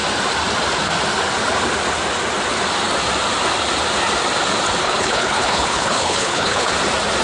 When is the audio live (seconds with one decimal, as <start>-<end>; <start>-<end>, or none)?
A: 0.0-4.8; 6.7-7.2